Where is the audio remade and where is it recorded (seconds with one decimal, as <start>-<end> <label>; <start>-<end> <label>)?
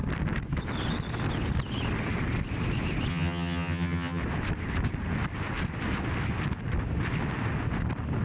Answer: 0.0-3.1 recorded; 3.1-4.2 remade; 4.2-8.2 recorded